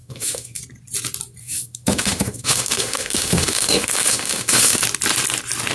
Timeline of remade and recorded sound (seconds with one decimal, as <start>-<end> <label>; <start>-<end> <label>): 0.0-0.6 remade; 0.6-1.4 recorded; 1.4-4.8 remade; 4.8-5.7 recorded